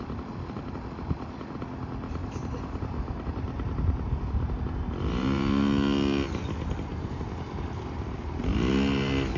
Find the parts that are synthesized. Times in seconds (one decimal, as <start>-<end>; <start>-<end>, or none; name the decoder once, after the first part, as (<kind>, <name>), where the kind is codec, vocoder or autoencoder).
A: 2.2-4.9 (vocoder, BigVGAN v2); 6.9-8.4

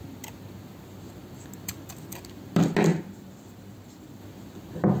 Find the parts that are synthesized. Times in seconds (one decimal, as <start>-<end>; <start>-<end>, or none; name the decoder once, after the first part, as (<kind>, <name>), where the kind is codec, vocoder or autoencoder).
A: 2.9-4.2 (vocoder, BigVGAN v2)

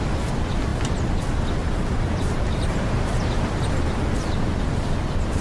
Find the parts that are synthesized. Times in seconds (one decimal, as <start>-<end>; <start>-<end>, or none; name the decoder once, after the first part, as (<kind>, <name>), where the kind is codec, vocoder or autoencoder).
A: 1.6-3.4 (vocoder, BigVGAN v2)